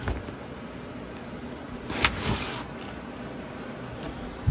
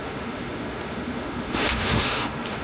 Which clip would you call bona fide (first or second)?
first